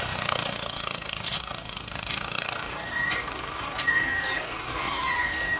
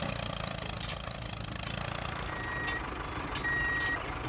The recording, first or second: second